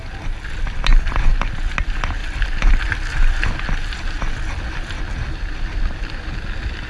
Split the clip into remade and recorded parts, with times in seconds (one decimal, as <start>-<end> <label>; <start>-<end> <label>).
0.0-0.9 recorded; 0.9-1.5 remade; 1.5-2.2 recorded; 2.2-6.3 remade; 6.3-6.9 recorded

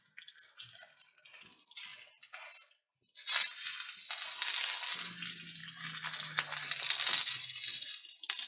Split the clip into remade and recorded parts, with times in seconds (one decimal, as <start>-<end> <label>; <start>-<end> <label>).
0.0-8.5 recorded

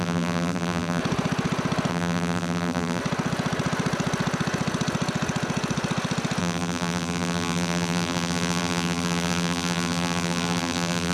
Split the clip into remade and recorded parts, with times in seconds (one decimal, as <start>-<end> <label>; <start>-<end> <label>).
0.0-1.0 remade; 1.0-1.9 recorded; 1.9-3.0 remade; 3.0-6.4 recorded; 6.4-11.1 remade

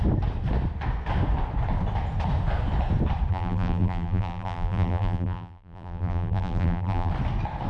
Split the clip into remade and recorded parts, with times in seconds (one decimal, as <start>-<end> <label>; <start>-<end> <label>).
0.0-3.3 recorded; 3.3-7.1 remade; 7.1-7.7 recorded

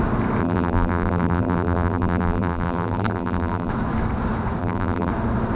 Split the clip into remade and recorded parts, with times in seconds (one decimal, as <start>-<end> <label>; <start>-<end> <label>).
0.0-0.4 recorded; 0.4-3.7 remade; 3.7-4.6 recorded; 4.6-5.1 remade; 5.1-5.5 recorded

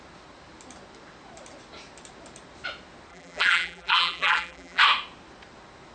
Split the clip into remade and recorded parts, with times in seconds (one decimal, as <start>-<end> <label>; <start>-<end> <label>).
0.0-3.1 recorded; 3.1-4.8 remade; 4.8-5.9 recorded

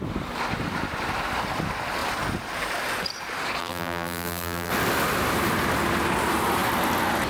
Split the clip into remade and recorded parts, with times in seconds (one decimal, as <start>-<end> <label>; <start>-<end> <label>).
0.0-3.6 recorded; 3.6-4.7 remade; 4.7-7.3 recorded

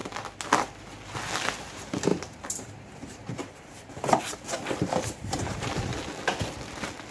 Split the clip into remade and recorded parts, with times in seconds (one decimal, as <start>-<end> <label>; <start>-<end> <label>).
0.0-1.6 recorded; 1.6-5.9 remade; 5.9-7.1 recorded